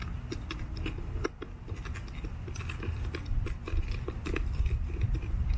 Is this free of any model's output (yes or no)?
yes